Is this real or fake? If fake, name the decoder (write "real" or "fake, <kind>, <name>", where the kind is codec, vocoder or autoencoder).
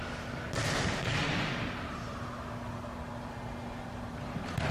real